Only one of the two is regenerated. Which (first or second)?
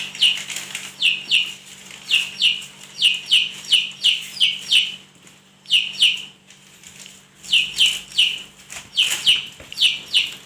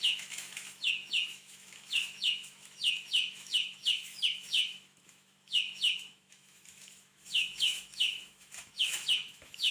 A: second